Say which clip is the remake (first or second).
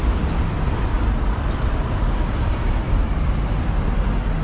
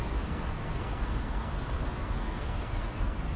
second